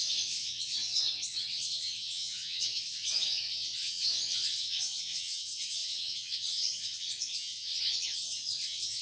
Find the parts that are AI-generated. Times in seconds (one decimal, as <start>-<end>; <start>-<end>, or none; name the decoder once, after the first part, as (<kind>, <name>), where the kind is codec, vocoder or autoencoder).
0.0-9.0 (vocoder, WaveNeXt)